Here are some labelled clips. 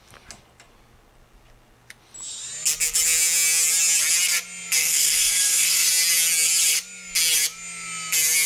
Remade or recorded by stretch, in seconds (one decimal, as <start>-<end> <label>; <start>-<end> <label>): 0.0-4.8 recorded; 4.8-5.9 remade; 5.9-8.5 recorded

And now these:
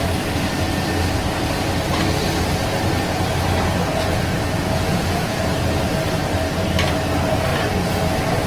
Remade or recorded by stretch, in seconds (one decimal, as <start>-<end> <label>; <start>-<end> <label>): 0.0-3.9 recorded; 3.9-5.5 remade; 5.5-8.5 recorded

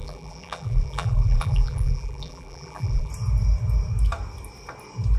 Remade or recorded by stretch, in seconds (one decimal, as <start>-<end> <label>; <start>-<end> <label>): 0.0-3.1 remade; 3.1-5.2 recorded

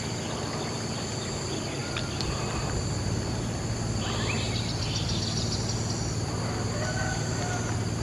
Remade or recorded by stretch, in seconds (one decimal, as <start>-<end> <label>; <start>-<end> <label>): 0.0-8.0 recorded

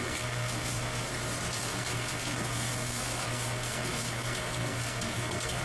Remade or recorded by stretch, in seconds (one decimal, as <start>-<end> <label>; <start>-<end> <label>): 0.0-1.1 remade; 1.1-1.6 recorded; 1.6-5.6 remade

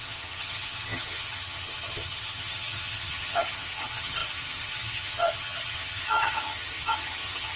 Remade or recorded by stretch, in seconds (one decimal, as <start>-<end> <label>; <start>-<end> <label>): 0.0-7.6 remade